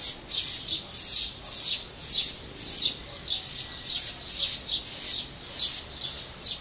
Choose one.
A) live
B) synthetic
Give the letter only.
A